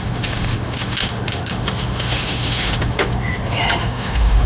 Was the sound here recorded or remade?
remade